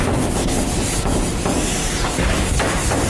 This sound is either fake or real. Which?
real